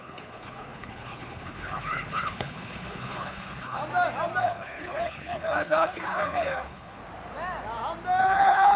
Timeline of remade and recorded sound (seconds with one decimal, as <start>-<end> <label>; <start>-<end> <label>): 0.0-3.8 remade; 3.8-4.4 recorded; 4.4-7.0 remade; 7.0-8.2 recorded; 8.2-8.8 remade

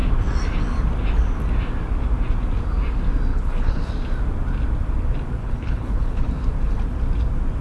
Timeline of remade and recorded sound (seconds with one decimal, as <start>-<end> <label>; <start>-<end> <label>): 0.0-3.3 recorded; 3.3-3.9 remade; 3.9-5.4 recorded; 5.4-6.3 remade; 6.3-7.6 recorded

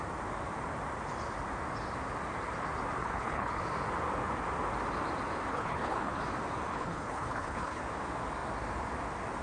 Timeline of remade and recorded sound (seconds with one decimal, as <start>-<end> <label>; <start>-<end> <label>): 0.0-3.0 recorded; 3.0-3.6 remade; 3.6-5.5 recorded; 5.5-6.2 remade; 6.2-6.7 recorded; 6.7-7.8 remade; 7.8-9.4 recorded